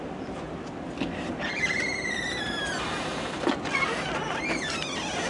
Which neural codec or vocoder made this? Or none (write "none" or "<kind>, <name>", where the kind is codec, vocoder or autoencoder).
none